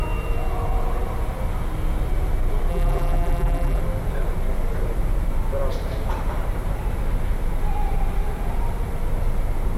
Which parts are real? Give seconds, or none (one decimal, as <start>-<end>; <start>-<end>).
0.0-2.7; 3.8-9.8